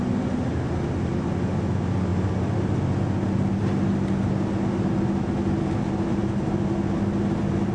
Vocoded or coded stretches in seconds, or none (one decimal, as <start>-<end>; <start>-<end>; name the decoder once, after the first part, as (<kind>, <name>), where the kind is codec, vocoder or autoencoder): none